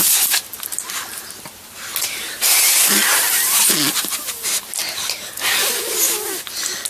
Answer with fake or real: real